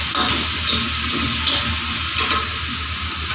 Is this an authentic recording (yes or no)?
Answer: yes